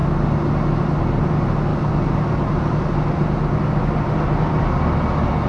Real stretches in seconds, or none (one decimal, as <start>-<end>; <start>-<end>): 0.0-5.5